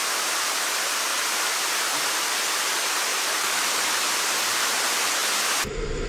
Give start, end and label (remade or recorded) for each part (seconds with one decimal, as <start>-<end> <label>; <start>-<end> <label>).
0.0-1.1 recorded; 1.1-2.5 remade; 2.5-3.1 recorded; 3.1-4.0 remade; 4.0-6.1 recorded